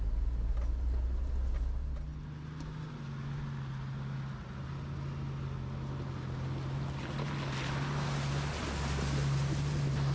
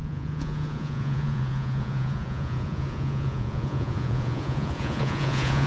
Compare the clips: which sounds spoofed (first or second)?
second